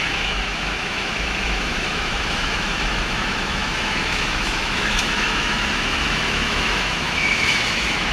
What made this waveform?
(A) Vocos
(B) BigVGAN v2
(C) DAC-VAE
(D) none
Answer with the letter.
C